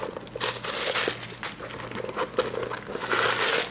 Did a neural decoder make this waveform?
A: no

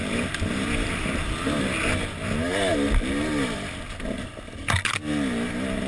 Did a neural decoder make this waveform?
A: no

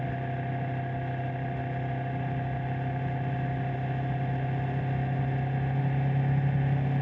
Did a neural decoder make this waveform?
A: no